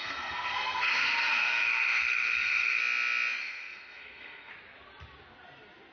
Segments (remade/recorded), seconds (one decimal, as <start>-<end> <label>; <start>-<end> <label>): 0.0-2.8 remade; 2.8-3.4 recorded; 3.4-4.5 remade; 4.5-5.9 recorded